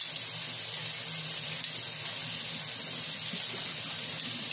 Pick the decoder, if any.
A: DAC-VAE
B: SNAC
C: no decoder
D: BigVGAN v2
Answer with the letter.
C